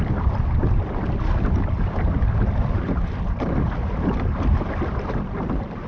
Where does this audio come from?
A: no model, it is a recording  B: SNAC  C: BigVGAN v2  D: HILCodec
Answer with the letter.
C